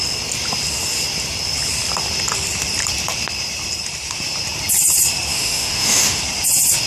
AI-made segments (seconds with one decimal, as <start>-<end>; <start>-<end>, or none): 5.3-6.2